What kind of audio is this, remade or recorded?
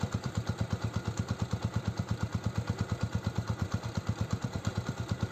remade